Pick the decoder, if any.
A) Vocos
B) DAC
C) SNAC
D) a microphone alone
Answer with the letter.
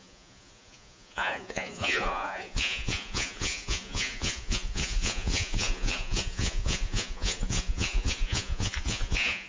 A